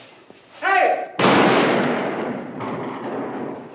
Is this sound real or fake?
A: real